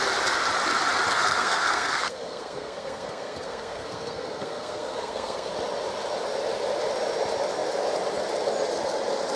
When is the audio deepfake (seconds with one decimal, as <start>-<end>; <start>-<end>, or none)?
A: 1.1-5.5